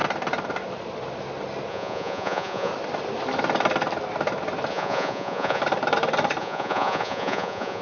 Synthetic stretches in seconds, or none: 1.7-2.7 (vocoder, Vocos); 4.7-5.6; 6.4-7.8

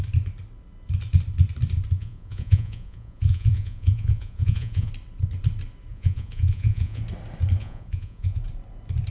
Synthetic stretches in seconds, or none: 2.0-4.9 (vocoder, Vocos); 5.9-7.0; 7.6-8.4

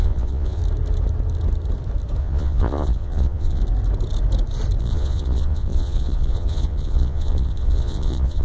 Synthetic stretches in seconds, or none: 0.0-0.6 (vocoder, Vocos); 2.2-3.6; 4.8-8.4